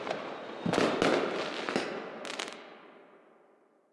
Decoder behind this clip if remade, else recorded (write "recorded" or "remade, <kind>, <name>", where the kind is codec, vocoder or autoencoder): recorded